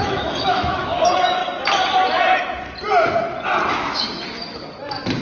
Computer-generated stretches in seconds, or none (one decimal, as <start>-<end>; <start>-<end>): 0.0-1.4; 3.7-4.2